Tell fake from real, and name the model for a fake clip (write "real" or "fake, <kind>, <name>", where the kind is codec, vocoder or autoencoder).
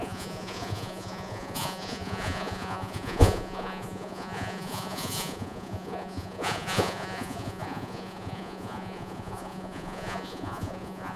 fake, vocoder, Vocos